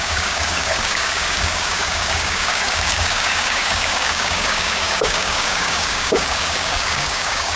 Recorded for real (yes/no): no